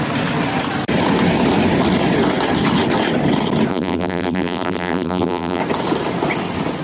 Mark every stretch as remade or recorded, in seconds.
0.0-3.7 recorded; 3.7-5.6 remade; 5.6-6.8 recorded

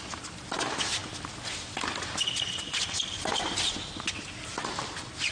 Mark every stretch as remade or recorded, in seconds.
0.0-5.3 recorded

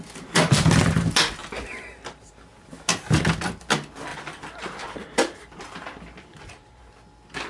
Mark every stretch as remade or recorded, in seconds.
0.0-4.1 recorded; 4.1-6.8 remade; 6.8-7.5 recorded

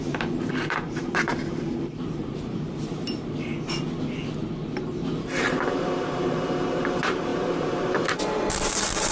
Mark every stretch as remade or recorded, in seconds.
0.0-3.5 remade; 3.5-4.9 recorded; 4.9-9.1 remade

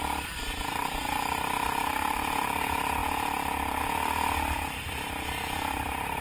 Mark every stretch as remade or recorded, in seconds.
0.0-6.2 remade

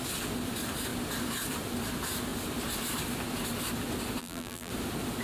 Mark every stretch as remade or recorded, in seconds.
0.0-4.2 recorded; 4.2-4.7 remade; 4.7-5.2 recorded

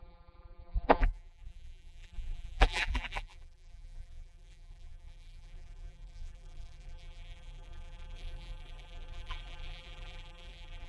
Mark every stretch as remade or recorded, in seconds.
0.0-10.9 remade

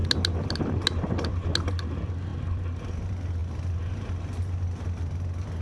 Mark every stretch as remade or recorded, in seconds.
0.0-5.6 recorded